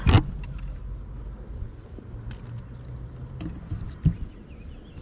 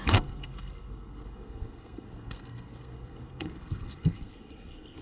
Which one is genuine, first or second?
first